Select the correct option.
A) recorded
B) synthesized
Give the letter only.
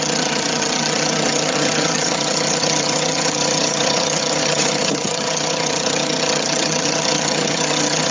B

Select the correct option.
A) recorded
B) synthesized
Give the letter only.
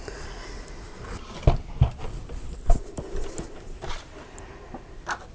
A